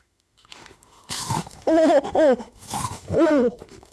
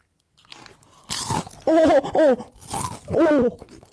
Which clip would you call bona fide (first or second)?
second